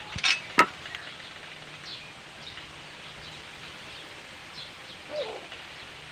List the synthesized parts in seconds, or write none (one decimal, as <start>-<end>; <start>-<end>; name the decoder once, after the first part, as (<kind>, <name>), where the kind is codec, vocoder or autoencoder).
none